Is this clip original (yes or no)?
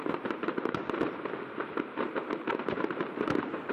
no